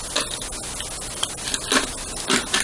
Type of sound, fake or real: real